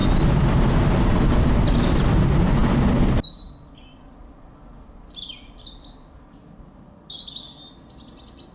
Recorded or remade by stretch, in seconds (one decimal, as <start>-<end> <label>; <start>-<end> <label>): 0.0-8.5 recorded